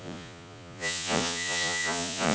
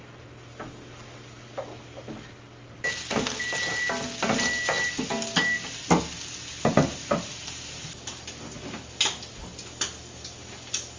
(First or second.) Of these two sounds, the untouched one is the second